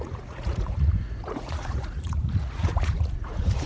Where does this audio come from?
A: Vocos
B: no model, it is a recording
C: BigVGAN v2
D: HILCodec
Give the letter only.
A